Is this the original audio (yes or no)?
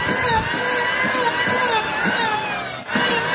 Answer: yes